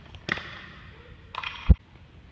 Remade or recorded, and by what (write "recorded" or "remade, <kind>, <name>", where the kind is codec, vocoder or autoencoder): recorded